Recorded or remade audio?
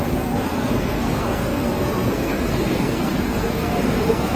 remade